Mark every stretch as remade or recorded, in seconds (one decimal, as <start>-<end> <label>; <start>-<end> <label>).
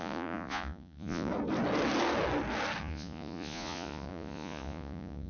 0.0-1.3 remade; 1.3-2.8 recorded; 2.8-5.3 remade